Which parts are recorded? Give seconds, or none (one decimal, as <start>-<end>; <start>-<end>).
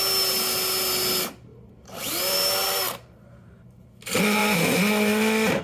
0.0-1.5; 3.5-4.4